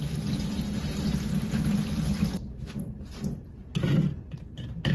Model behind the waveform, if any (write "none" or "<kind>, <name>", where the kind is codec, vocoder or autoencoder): none